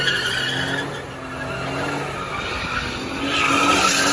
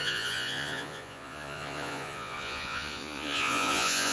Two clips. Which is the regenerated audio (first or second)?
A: second